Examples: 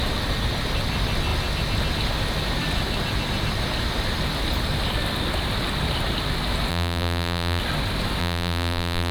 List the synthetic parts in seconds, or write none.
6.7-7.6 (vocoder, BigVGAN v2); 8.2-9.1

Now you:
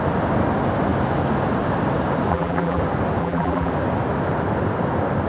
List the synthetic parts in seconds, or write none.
2.3-2.8 (vocoder, BigVGAN v2); 3.2-3.7

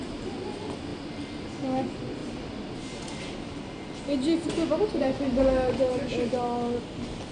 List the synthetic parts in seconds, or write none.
none

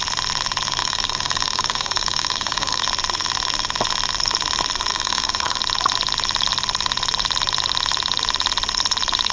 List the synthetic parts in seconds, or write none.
0.8-2.8 (codec, DAC); 4.9-5.6

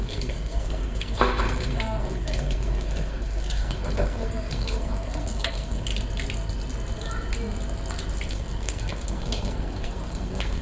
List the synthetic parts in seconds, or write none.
0.0-5.9 (codec, SNAC); 8.3-10.6

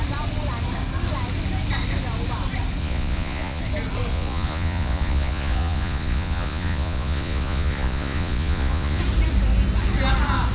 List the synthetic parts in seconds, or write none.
2.8-3.6 (vocoder, Vocos); 4.1-9.0

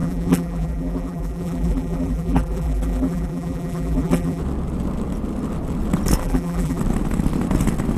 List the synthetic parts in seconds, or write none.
0.0-4.4 (vocoder, BigVGAN v2); 6.2-6.8